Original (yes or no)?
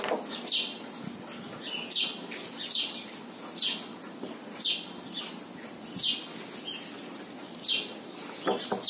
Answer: yes